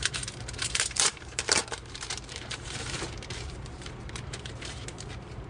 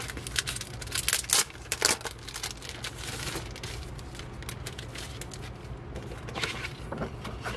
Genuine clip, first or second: second